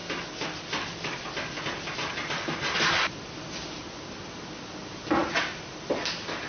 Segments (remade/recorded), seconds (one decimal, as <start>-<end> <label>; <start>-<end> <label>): 0.0-6.5 recorded